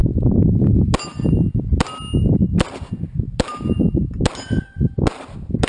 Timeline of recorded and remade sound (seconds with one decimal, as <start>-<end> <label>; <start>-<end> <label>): 0.0-3.5 recorded; 3.5-4.2 remade; 4.2-5.7 recorded